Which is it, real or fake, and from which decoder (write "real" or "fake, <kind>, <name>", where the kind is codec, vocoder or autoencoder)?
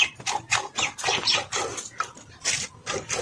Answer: real